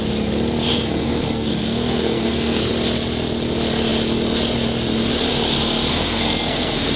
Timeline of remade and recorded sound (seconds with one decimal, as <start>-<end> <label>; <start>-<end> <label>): 0.0-0.7 recorded; 0.7-2.7 remade; 2.7-5.9 recorded; 5.9-7.0 remade